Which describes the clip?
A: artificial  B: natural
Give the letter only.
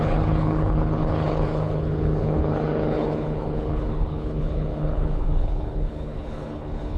A